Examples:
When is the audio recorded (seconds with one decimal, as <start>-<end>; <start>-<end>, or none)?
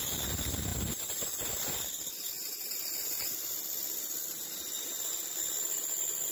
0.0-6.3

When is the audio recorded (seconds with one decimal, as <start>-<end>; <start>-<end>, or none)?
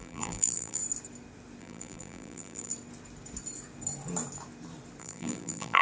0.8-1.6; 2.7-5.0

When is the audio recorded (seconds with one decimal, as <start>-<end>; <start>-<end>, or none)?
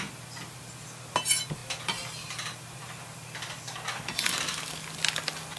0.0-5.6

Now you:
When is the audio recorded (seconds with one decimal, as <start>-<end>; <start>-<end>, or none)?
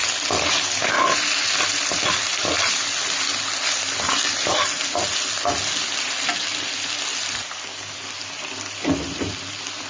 2.7-9.9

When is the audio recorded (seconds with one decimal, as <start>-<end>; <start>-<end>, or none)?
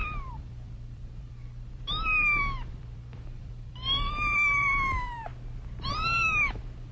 5.3-5.9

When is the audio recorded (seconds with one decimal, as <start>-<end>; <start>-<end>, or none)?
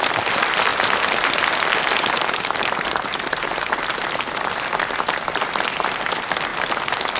0.0-7.2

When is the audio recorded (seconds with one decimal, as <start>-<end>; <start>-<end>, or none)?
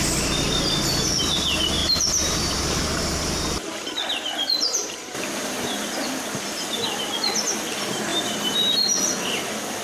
0.0-1.8; 2.8-4.8; 5.8-8.1; 8.7-9.8